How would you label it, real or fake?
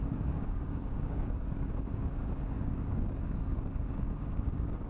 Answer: fake